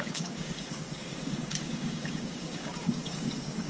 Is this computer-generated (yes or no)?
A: yes